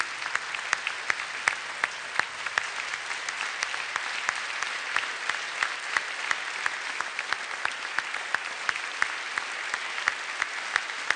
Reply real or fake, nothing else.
real